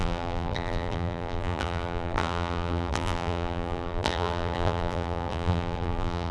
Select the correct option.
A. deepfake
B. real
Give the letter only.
A